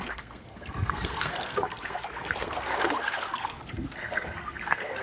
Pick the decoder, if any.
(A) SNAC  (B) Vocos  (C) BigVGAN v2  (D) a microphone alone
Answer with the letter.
A